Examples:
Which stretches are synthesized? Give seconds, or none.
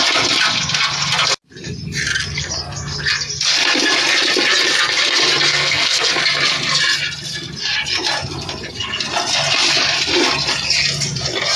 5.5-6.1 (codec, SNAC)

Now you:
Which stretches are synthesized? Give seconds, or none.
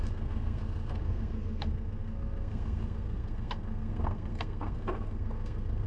0.0-5.9 (codec, SNAC)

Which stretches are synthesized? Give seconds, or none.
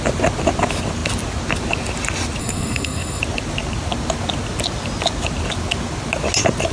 2.4-3.2 (codec, SNAC)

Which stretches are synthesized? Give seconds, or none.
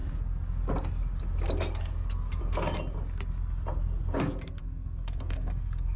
4.6-6.0 (codec, SNAC)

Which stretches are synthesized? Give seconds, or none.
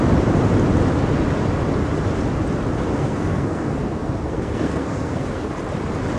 2.9-5.5 (codec, SNAC)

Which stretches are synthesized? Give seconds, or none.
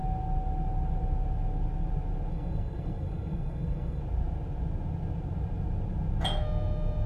2.3-4.0 (codec, SNAC)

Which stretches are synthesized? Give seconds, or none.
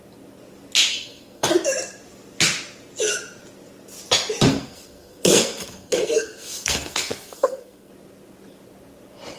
0.9-1.5 (codec, SNAC); 4.5-7.9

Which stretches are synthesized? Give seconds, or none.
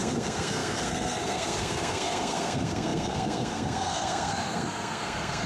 0.0-5.5 (codec, SNAC)